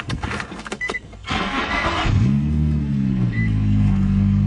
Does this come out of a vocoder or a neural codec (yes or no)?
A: yes